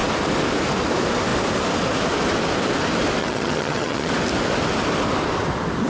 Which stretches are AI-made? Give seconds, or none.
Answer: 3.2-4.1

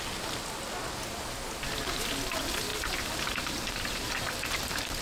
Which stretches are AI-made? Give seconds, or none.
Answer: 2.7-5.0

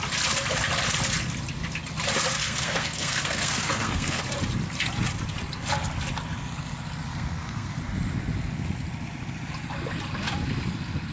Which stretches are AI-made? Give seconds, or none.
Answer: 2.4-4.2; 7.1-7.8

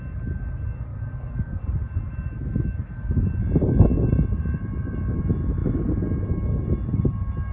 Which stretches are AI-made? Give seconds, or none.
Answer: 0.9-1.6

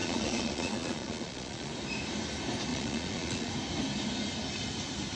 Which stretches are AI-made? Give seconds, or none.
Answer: 0.0-1.7; 2.7-3.5

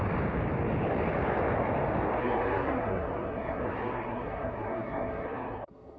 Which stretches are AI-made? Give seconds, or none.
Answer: 2.2-6.0

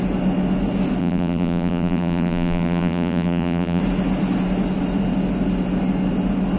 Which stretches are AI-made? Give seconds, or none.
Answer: 1.0-3.8

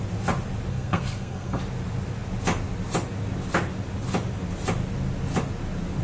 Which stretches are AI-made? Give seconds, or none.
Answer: 0.7-1.6